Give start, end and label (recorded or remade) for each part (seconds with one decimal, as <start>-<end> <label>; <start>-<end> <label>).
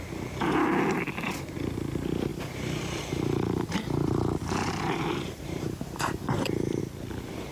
0.0-2.3 recorded; 2.3-6.8 remade; 6.8-7.5 recorded